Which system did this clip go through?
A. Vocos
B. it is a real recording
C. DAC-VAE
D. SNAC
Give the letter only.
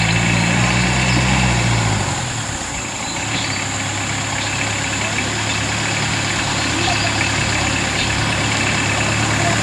B